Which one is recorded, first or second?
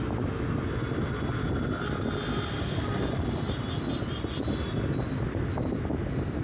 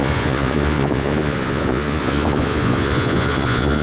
first